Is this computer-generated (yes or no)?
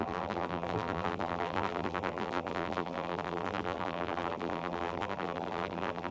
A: yes